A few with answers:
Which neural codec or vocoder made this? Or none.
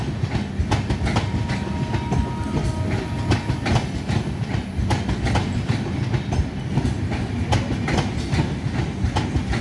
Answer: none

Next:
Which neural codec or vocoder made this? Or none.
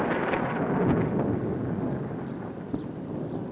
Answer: none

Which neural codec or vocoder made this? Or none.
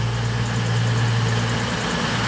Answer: none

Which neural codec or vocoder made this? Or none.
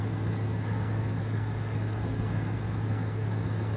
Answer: codec, SNAC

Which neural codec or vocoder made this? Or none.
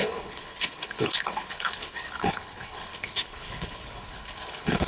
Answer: codec, HILCodec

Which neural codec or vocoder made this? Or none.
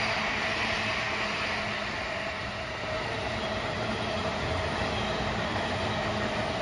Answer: none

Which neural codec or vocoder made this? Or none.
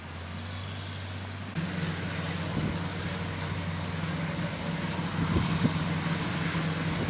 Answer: none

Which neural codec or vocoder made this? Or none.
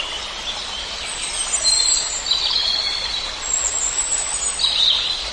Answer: none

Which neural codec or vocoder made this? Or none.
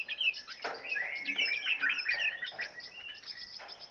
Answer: none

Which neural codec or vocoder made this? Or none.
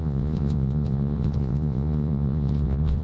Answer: vocoder, Vocos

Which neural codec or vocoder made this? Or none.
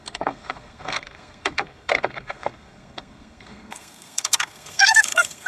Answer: codec, SNAC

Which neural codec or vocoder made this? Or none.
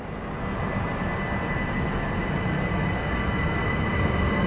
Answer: none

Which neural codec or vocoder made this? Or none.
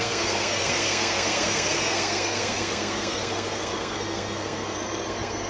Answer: codec, SNAC